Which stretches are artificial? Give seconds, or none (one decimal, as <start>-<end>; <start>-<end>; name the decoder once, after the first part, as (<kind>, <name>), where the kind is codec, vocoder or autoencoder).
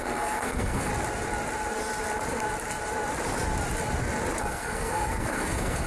0.0-0.9 (codec, SNAC); 4.4-5.9